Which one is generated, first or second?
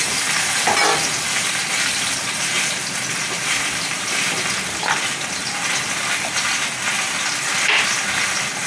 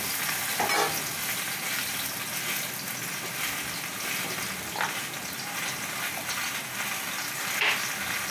first